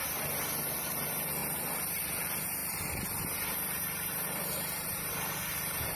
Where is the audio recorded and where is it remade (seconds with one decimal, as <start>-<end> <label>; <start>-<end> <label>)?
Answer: 0.0-1.4 recorded; 1.4-2.0 remade; 2.0-2.6 recorded; 2.6-5.4 remade; 5.4-6.0 recorded